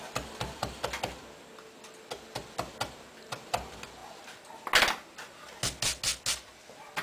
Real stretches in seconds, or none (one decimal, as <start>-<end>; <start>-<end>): 0.0-7.0